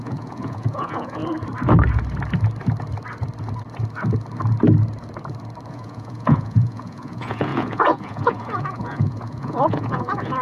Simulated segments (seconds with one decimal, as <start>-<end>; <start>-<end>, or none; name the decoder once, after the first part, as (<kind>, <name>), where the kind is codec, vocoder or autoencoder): 0.0-1.2 (vocoder, Vocos); 5.7-10.4